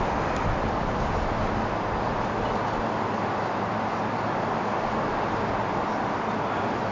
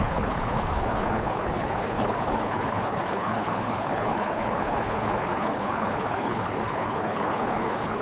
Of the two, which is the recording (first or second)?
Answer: first